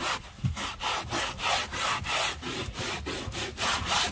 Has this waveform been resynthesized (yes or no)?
no